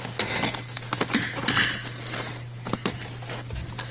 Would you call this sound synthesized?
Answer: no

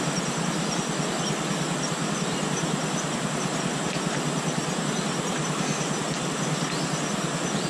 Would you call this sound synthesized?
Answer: no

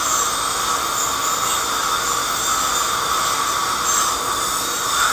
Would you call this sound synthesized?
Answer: no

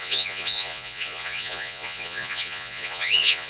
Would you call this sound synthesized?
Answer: yes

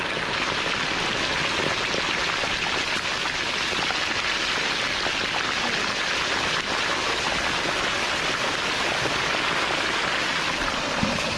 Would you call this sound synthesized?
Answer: no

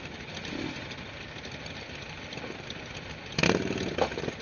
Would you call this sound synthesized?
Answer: no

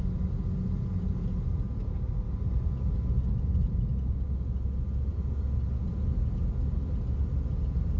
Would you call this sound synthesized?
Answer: no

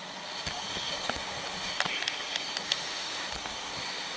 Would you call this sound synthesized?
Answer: no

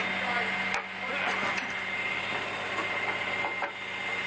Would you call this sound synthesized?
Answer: no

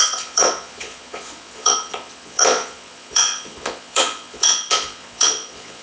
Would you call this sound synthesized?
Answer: yes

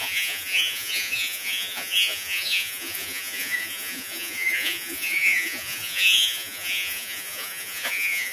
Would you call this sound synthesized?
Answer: yes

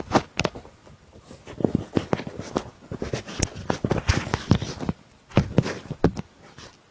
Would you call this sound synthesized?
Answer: no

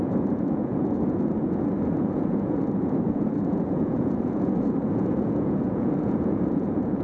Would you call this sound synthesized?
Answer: yes